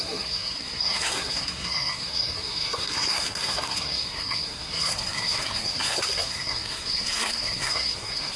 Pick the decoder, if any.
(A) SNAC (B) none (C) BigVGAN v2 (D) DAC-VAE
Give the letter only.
A